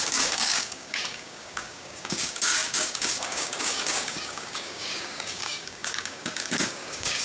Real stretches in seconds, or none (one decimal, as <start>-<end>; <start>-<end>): none